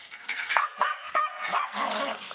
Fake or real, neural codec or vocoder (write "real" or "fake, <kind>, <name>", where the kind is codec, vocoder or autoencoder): fake, codec, SNAC